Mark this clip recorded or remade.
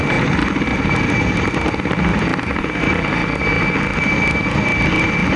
recorded